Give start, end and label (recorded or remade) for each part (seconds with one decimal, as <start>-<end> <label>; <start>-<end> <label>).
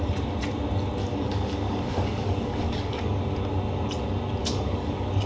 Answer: 0.0-1.0 recorded; 1.0-3.2 remade; 3.2-4.4 recorded; 4.4-5.3 remade